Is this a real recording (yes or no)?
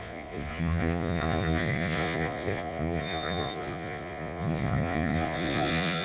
no